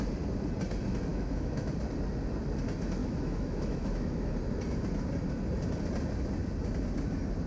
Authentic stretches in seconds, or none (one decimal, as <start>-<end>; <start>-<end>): 0.0-1.1; 1.7-3.0; 4.3-7.5